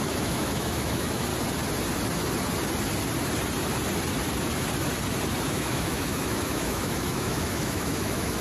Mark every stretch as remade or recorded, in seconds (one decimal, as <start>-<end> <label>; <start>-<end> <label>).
0.0-1.3 remade; 1.3-5.4 recorded; 5.4-8.4 remade